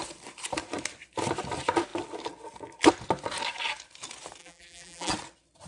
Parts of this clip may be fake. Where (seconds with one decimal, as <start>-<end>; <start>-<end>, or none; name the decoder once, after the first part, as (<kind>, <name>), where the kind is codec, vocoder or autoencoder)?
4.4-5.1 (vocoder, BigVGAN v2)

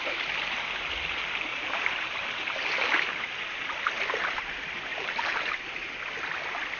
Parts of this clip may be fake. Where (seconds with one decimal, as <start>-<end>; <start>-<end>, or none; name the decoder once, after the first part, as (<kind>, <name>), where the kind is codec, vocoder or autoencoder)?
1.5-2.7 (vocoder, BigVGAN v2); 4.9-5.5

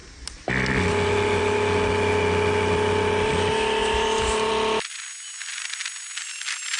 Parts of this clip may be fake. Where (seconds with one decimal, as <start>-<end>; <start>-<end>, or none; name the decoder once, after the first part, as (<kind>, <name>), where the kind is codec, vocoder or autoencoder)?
3.8-4.5 (vocoder, BigVGAN v2)